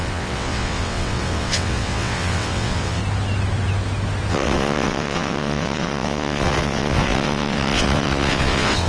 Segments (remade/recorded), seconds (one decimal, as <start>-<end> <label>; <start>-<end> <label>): 0.0-3.0 remade; 3.0-4.3 recorded; 4.3-8.9 remade